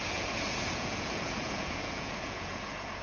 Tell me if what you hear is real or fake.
fake